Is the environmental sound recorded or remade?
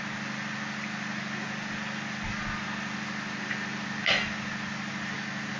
recorded